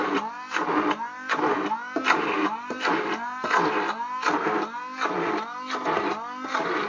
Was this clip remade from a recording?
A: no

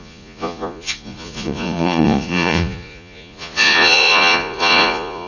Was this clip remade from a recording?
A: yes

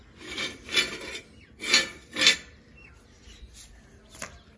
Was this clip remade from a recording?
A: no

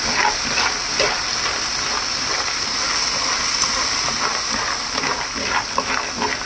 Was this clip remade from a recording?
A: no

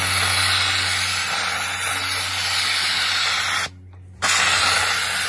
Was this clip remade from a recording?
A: no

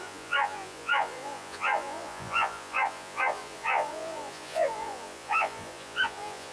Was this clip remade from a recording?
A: yes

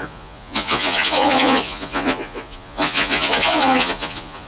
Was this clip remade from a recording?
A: yes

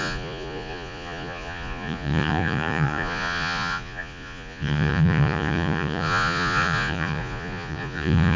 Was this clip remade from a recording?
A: yes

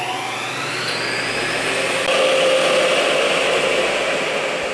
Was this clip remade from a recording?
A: no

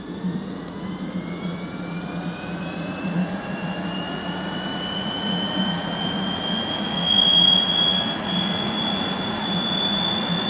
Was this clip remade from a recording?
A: yes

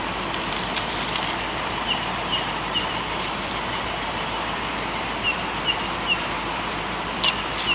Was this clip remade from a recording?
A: no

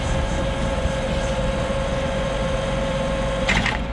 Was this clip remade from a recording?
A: yes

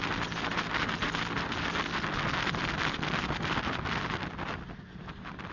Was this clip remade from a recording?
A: no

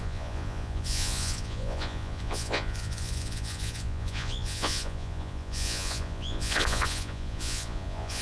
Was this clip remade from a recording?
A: yes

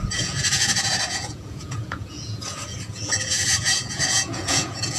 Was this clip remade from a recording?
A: yes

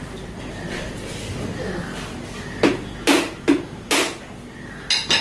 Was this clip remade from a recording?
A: no